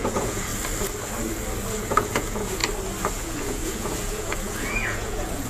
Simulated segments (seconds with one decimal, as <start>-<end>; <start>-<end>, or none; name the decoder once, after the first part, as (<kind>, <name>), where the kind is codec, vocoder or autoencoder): 0.0-0.5 (vocoder, Vocos); 1.7-2.6; 3.1-5.5